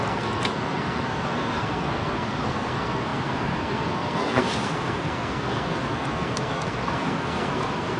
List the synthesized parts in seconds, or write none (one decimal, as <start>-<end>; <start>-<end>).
0.0-8.0